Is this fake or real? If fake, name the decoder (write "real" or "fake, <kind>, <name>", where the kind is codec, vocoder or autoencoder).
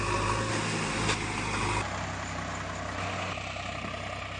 real